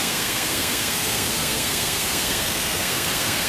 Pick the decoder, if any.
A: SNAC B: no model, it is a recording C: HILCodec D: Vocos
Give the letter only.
A